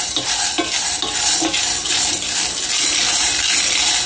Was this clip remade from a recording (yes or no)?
no